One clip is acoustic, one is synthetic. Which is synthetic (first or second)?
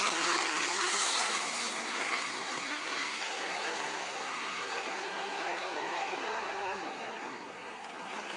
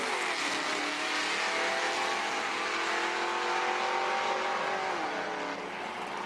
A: first